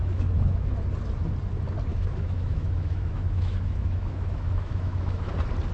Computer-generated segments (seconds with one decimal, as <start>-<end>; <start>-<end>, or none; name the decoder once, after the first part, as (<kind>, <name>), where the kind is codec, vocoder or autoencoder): 0.0-0.7 (autoencoder, DAC-VAE); 1.9-5.3